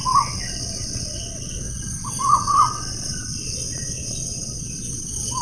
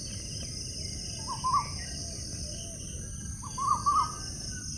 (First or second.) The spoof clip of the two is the first